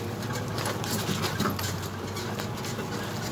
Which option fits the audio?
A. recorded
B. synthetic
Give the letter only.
A